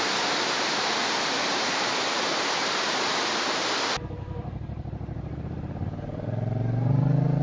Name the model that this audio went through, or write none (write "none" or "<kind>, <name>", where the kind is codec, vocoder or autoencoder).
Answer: vocoder, BigVGAN v2